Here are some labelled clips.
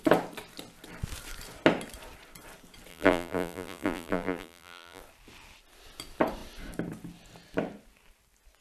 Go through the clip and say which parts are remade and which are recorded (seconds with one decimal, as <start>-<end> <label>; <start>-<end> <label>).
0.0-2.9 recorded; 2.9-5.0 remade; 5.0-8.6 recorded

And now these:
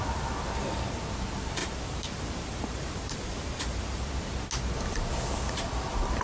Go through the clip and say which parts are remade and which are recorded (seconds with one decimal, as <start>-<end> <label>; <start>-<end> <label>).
0.0-1.6 recorded; 1.6-4.1 remade; 4.1-6.2 recorded

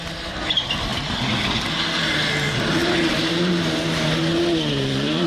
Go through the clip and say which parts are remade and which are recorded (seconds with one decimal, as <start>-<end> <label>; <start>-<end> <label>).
0.0-4.2 recorded; 4.2-5.3 remade

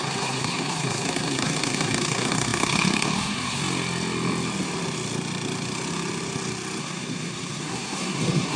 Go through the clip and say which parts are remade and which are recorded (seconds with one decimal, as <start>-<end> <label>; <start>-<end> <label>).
0.0-3.6 remade; 3.6-6.8 recorded; 6.8-8.6 remade

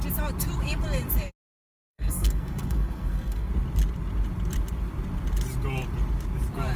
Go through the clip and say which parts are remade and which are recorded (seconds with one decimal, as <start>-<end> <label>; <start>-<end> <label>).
0.0-1.8 recorded; 1.8-3.5 remade; 3.5-6.8 recorded

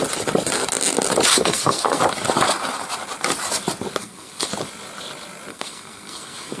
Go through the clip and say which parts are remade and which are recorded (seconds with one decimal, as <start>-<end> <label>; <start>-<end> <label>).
0.0-1.3 recorded; 1.3-2.0 remade; 2.0-4.0 recorded; 4.0-4.5 remade; 4.5-5.5 recorded; 5.5-6.6 remade

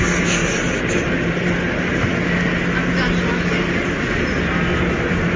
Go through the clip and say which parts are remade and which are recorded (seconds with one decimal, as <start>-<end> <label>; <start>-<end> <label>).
0.0-0.4 recorded; 0.4-1.3 remade; 1.3-5.4 recorded